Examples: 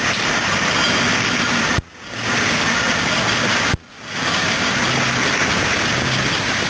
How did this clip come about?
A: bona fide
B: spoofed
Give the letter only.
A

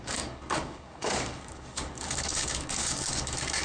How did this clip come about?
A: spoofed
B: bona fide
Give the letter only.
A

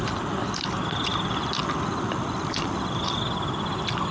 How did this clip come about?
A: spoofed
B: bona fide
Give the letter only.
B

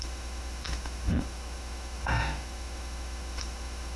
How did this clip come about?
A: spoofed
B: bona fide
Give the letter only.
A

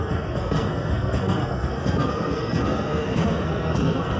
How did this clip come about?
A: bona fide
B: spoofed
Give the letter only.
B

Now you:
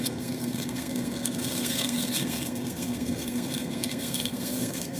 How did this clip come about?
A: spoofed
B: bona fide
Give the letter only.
A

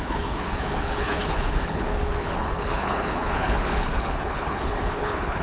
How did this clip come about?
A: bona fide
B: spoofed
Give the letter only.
B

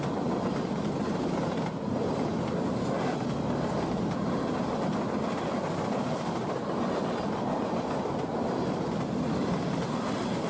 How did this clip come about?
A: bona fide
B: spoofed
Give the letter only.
A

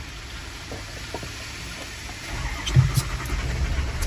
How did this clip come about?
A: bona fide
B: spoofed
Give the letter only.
A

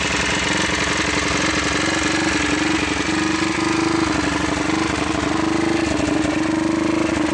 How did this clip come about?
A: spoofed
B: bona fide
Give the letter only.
B